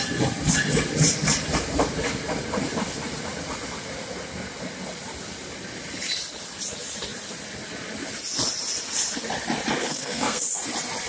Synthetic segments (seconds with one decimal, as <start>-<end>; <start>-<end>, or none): 9.8-10.4